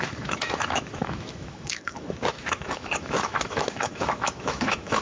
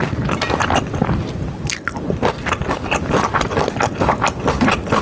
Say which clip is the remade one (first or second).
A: first